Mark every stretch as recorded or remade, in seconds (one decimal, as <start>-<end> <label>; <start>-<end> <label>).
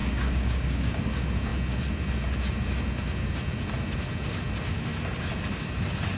0.0-1.0 remade; 1.0-6.2 recorded